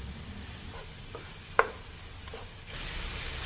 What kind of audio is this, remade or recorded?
recorded